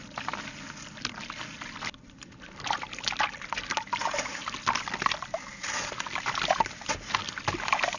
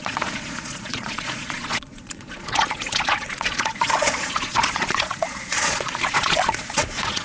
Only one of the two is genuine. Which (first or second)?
first